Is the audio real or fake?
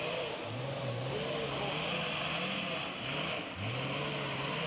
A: real